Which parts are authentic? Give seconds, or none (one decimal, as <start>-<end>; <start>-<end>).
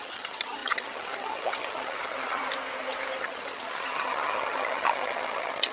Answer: 2.4-3.2